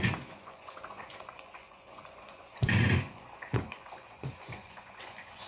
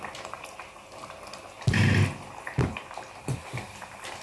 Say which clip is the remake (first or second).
first